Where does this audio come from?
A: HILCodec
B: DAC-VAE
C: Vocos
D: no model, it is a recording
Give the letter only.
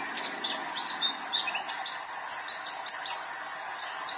D